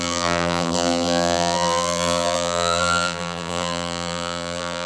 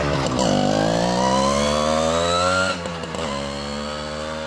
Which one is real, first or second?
second